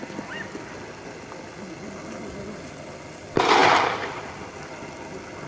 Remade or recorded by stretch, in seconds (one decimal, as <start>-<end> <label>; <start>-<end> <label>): 0.0-3.6 recorded; 3.6-4.5 remade; 4.5-5.5 recorded